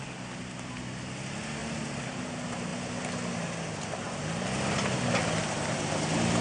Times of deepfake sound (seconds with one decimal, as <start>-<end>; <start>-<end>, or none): none